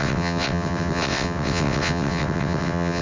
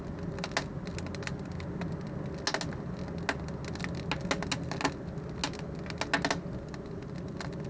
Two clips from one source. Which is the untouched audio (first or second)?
second